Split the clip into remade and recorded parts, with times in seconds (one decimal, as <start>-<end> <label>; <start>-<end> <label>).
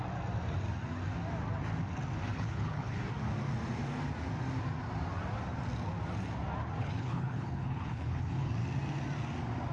0.0-2.3 recorded; 2.3-3.0 remade; 3.0-6.8 recorded; 6.8-8.5 remade; 8.5-9.7 recorded